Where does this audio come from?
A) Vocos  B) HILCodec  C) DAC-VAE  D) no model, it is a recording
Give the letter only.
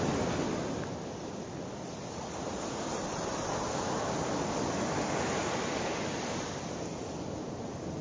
D